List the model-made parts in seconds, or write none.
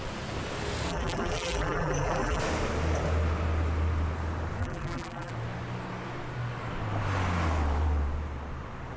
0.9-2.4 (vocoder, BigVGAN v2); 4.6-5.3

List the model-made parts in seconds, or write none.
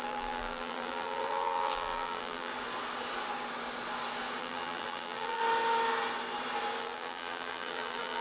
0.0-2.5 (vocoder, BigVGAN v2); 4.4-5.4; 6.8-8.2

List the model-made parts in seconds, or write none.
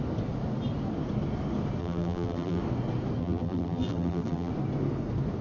1.8-2.6 (vocoder, BigVGAN v2); 3.2-4.5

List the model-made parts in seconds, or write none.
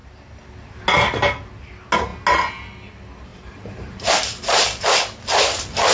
3.3-4.8 (vocoder, BigVGAN v2)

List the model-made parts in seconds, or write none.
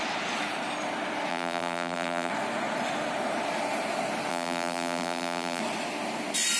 1.3-2.3 (vocoder, BigVGAN v2); 4.3-5.6